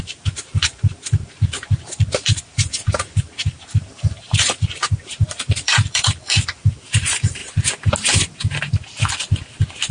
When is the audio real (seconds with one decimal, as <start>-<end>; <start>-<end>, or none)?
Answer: 7.4-9.9